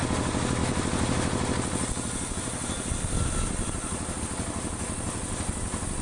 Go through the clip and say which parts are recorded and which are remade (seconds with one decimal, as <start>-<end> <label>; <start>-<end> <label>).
0.0-6.0 recorded